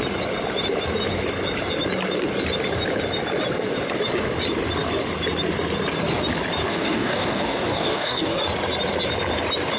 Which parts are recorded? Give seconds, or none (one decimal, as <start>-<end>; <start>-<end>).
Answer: 0.0-6.7; 8.4-9.8

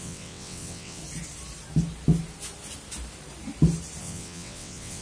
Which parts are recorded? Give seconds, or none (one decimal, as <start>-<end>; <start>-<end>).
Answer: 1.0-4.0

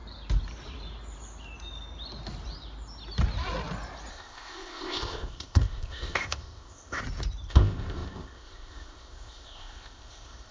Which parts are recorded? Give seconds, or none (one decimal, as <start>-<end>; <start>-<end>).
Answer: 0.0-4.1; 7.0-7.5